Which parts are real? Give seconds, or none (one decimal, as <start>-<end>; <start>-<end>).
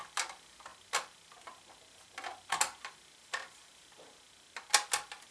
0.0-5.3